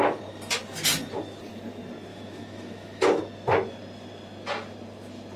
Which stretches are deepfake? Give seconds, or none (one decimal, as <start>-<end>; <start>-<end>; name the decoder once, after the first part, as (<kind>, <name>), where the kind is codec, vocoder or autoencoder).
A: 2.1-3.2 (autoencoder, DAC-VAE)